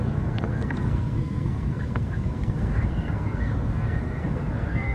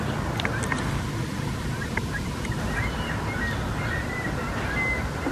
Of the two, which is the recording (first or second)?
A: second